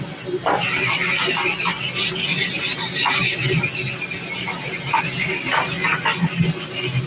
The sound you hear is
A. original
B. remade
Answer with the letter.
A